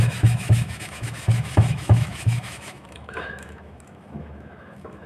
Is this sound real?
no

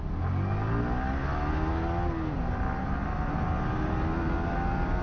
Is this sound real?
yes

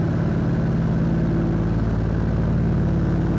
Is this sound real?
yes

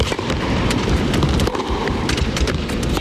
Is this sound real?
no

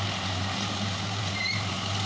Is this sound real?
no